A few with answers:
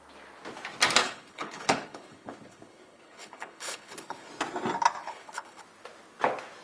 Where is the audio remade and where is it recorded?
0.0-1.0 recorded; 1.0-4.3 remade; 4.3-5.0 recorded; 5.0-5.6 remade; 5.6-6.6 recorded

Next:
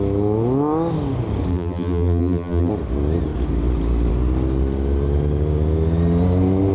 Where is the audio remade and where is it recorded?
0.0-1.5 recorded; 1.5-2.7 remade; 2.7-6.7 recorded

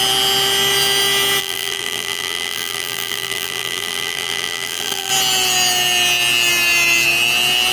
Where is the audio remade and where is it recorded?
0.0-1.4 recorded; 1.4-5.1 remade; 5.1-7.7 recorded

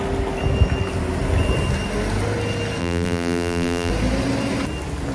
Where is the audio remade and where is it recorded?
0.0-2.8 recorded; 2.8-3.9 remade; 3.9-5.1 recorded

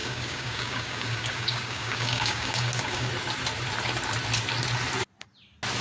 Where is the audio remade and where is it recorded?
0.0-3.1 remade; 3.1-5.8 recorded

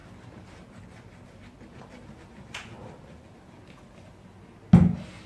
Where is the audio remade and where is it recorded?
0.0-5.3 recorded

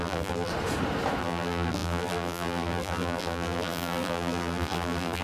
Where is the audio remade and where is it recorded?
0.0-0.5 remade; 0.5-1.2 recorded; 1.2-5.2 remade